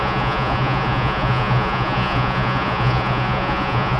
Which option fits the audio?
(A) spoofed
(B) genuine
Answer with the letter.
A